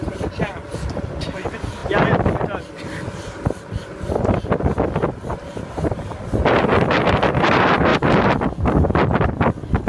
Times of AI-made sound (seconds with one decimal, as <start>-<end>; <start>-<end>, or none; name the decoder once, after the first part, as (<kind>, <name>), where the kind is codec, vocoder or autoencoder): 0.0-1.8 (vocoder, BigVGAN v2); 6.6-7.9